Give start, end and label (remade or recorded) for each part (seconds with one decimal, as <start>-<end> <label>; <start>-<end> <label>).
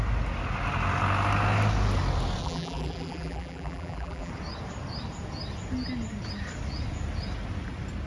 0.0-2.4 recorded; 2.4-4.3 remade; 4.3-8.1 recorded